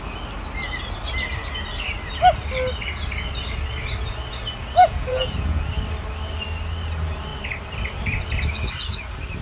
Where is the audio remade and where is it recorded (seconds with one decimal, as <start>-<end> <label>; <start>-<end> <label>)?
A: 0.0-4.8 recorded; 4.8-5.6 remade; 5.6-9.4 recorded